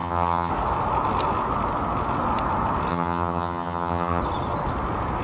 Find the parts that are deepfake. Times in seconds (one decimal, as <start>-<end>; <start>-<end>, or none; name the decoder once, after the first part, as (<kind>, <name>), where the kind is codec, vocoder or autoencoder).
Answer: 0.0-0.5 (vocoder, HiFi-GAN); 2.9-4.2